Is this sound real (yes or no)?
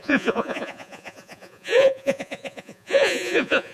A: no